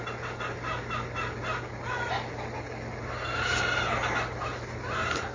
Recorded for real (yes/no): yes